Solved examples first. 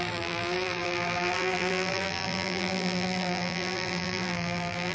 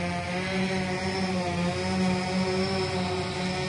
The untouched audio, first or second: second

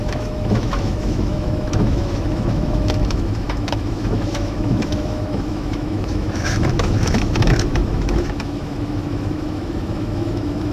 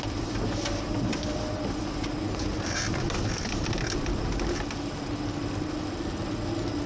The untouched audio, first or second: second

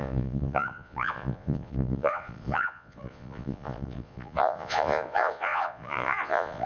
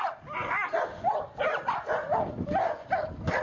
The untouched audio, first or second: second